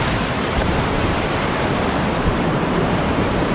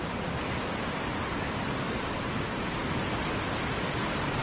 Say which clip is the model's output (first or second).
first